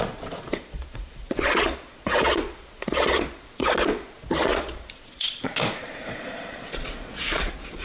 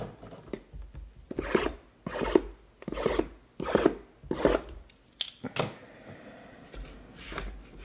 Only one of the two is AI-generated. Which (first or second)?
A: first